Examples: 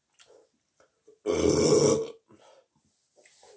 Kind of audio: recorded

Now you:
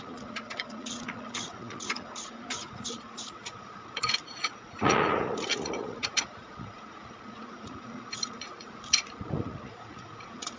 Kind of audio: remade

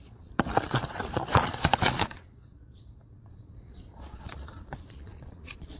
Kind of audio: remade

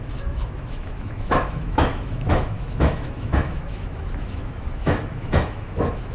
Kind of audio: remade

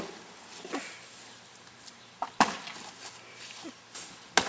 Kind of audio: recorded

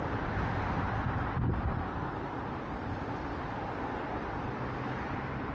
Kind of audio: recorded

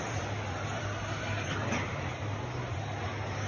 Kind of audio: recorded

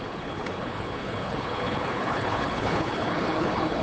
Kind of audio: remade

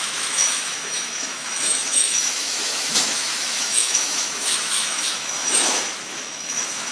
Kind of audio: remade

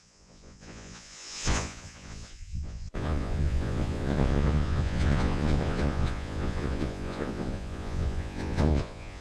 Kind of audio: remade